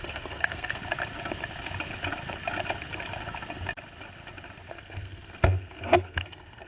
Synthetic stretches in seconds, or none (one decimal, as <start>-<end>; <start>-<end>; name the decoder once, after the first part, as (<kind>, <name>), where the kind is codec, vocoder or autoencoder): 0.0-0.8 (codec, SNAC); 4.7-6.7